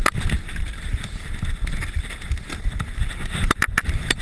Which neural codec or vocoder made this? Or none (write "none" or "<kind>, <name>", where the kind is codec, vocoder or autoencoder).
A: none